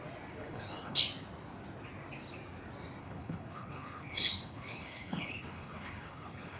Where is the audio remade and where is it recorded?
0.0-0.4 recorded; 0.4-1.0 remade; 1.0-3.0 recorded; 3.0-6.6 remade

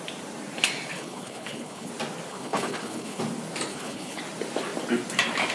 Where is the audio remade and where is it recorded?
0.0-0.9 recorded; 0.9-1.9 remade; 1.9-2.3 recorded; 2.3-3.2 remade; 3.2-3.7 recorded; 3.7-4.2 remade; 4.2-5.5 recorded